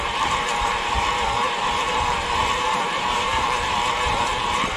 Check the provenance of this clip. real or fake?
fake